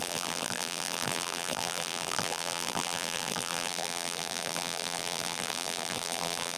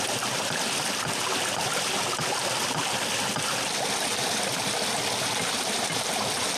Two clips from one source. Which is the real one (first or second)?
second